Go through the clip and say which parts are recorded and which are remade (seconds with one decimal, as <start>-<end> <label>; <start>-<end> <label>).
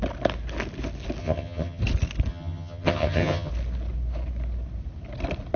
0.0-1.2 recorded; 1.2-1.8 remade; 1.8-2.3 recorded; 2.3-3.5 remade; 3.5-5.6 recorded